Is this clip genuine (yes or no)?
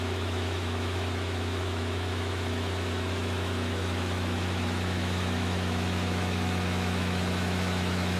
no